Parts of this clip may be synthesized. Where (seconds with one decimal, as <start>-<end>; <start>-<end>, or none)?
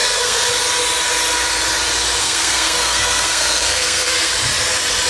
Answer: 0.0-0.5; 2.2-4.3